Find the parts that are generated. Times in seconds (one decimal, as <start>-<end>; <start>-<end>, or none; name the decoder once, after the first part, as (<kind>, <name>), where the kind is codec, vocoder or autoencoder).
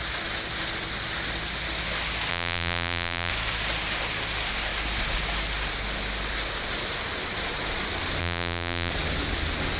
2.3-3.3 (vocoder, BigVGAN v2); 8.2-8.9